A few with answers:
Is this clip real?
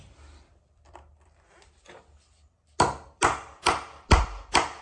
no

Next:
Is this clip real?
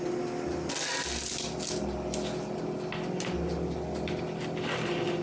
yes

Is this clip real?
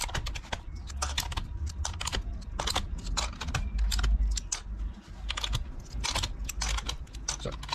yes